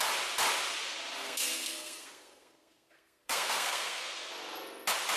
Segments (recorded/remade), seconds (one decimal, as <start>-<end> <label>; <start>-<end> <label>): 0.0-1.2 recorded; 1.2-4.3 remade; 4.3-5.2 recorded